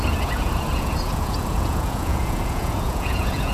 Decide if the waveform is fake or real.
fake